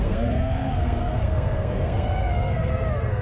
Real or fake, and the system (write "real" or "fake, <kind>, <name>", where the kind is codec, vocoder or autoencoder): fake, codec, SNAC